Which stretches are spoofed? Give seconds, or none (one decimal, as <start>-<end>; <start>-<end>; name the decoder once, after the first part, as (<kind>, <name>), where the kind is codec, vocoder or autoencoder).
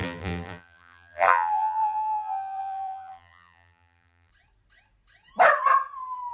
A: 0.0-4.3 (vocoder, BigVGAN v2)